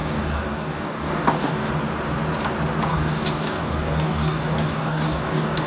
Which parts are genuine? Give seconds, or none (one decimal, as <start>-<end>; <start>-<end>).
1.7-2.9